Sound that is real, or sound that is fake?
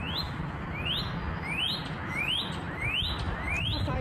real